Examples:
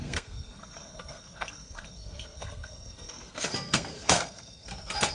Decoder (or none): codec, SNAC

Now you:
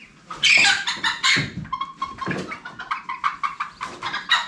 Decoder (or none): none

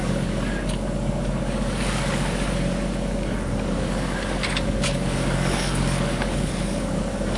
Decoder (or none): codec, DAC